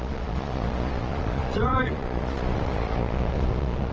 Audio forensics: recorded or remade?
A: remade